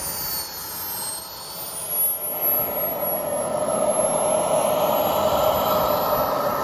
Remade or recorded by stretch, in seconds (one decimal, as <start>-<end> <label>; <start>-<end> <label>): 0.0-6.6 recorded